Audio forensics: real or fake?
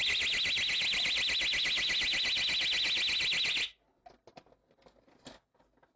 real